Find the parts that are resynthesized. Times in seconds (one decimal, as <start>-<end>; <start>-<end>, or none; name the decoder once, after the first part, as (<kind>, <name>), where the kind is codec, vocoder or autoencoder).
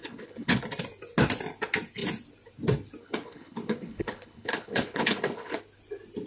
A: 0.0-0.6 (codec, HILCodec); 3.0-5.6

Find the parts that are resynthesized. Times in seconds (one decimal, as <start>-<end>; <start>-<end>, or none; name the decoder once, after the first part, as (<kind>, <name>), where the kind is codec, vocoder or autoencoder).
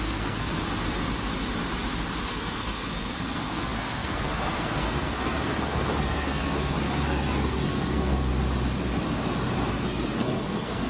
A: 0.0-0.6 (codec, SNAC); 2.3-8.3; 9.7-10.9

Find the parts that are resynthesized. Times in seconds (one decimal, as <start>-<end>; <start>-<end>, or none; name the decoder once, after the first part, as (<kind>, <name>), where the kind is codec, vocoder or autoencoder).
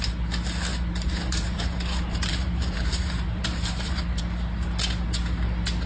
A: 0.7-4.2 (vocoder, BigVGAN v2)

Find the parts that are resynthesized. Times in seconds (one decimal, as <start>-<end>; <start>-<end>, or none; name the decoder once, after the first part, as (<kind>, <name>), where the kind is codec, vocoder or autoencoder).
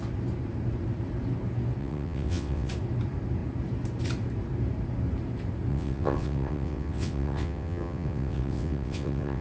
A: 1.8-2.7 (vocoder, WaveNeXt); 5.7-9.4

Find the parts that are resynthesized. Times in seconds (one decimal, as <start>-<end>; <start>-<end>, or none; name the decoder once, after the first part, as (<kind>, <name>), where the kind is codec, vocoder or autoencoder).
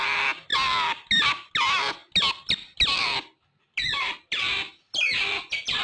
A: none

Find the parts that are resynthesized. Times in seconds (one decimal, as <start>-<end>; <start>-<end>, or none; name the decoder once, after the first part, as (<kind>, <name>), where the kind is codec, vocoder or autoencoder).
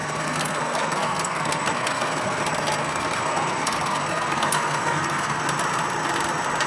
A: 0.0-2.4 (codec, SNAC); 2.8-5.4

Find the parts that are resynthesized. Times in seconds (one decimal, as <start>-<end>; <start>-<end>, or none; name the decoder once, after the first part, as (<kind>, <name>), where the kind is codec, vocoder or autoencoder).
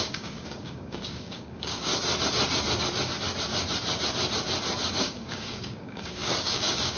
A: 0.0-1.9 (codec, DAC); 5.0-7.0